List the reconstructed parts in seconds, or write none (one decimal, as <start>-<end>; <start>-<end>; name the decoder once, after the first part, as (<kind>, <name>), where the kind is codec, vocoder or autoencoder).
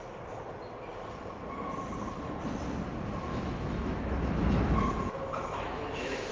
3.3-6.3 (autoencoder, DAC-VAE)